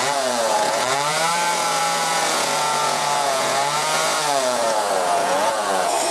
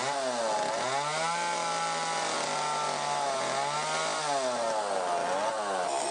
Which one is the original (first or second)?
second